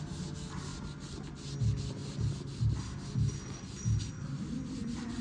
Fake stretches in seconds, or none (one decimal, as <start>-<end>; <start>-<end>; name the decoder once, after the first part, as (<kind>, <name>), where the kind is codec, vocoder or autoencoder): none